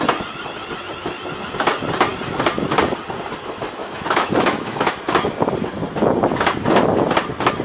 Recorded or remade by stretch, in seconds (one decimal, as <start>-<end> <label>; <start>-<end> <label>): 0.0-3.8 recorded; 3.8-5.0 remade; 5.0-7.6 recorded